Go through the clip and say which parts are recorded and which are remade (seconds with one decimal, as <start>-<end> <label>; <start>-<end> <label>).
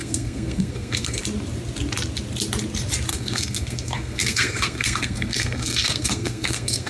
0.0-1.2 remade; 1.2-3.1 recorded; 3.1-6.9 remade